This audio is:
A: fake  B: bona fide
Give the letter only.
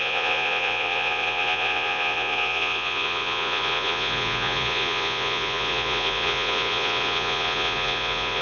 A